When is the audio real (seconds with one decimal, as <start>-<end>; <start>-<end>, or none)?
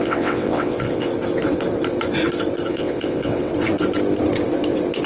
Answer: 1.1-2.7; 3.5-5.1